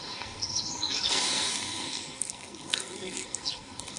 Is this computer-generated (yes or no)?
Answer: yes